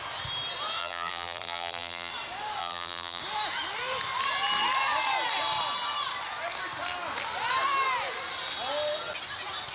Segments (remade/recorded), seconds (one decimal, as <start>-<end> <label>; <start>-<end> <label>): 0.0-0.8 recorded; 0.8-2.1 remade; 2.1-2.6 recorded; 2.6-3.2 remade; 3.2-9.7 recorded